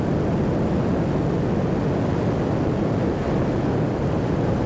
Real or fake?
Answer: real